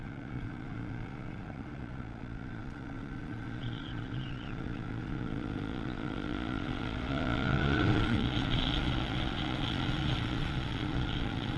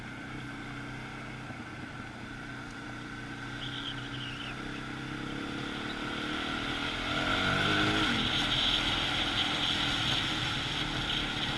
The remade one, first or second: first